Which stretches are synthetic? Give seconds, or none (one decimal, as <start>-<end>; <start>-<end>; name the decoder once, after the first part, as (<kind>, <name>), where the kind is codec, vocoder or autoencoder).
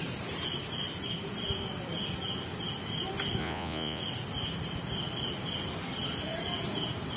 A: 3.4-4.0 (vocoder, Vocos)